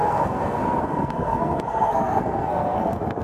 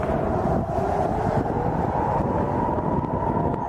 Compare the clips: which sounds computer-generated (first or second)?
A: first